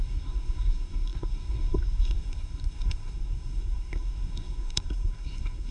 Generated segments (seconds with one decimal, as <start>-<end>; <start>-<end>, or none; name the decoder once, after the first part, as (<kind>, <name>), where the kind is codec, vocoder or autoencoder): 0.0-5.7 (codec, SNAC)